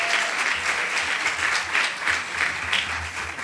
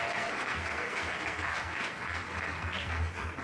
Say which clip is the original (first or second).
first